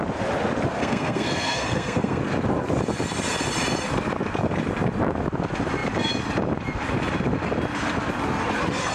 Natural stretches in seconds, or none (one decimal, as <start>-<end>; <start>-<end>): 0.0-0.8; 2.2-8.9